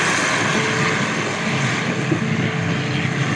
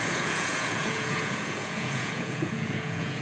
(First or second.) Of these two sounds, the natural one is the first